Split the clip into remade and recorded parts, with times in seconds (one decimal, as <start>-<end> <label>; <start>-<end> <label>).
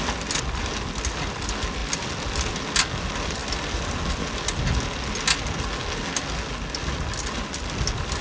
0.0-8.2 recorded